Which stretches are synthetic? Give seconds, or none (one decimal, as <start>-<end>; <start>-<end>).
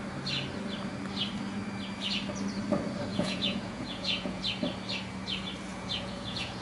3.1-4.4; 5.7-6.6